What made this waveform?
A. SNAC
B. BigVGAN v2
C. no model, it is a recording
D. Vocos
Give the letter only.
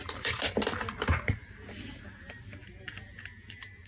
B